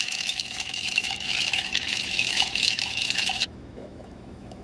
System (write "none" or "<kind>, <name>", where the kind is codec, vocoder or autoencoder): autoencoder, DAC-VAE